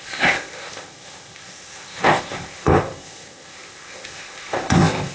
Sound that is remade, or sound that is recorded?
remade